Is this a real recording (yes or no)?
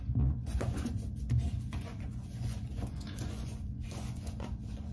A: no